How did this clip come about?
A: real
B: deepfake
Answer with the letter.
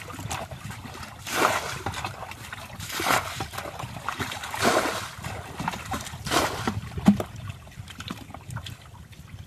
A